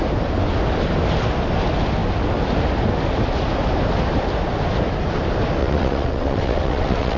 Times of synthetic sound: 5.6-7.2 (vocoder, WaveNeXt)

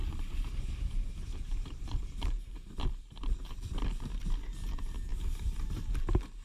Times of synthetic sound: 0.0-3.8 (vocoder, BigVGAN v2); 5.1-5.9

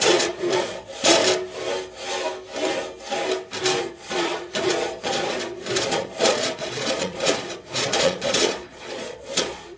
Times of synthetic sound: 0.0-1.2 (vocoder, Vocos); 3.8-9.8

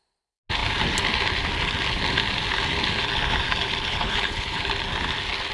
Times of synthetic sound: 3.9-4.6 (codec, HILCodec)

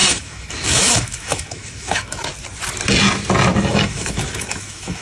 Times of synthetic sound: 0.0-2.3 (autoencoder, DAC-VAE); 3.7-5.0

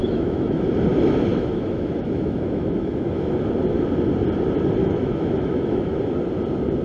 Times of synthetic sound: 0.0-0.6 (autoencoder, DAC-VAE); 1.3-3.4; 4.8-5.9

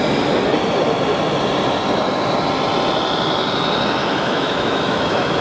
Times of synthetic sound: 4.0-5.4 (autoencoder, DAC-VAE)